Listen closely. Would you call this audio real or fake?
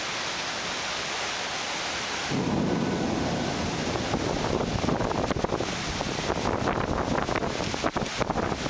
real